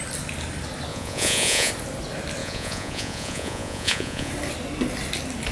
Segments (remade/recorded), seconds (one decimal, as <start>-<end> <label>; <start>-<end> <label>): 0.0-0.9 recorded; 0.9-1.7 remade; 1.7-2.4 recorded; 2.4-4.3 remade; 4.3-5.5 recorded